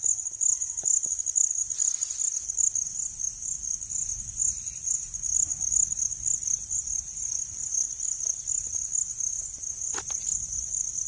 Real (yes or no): yes